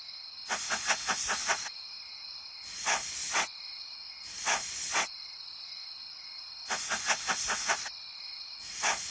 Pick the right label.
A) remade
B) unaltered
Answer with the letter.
B